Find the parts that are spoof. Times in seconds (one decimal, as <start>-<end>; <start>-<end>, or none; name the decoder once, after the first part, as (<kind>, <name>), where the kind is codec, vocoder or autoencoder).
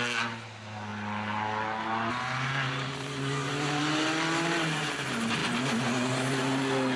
none